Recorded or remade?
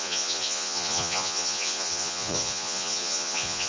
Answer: remade